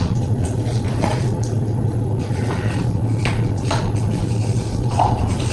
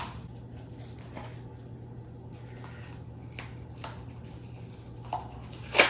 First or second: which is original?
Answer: second